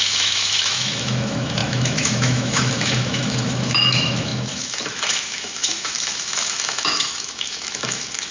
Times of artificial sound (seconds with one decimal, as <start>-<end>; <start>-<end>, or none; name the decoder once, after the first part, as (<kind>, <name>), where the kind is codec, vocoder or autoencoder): 0.0-8.3 (autoencoder, DAC-VAE)